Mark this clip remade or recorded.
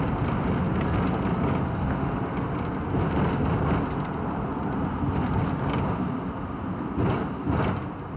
recorded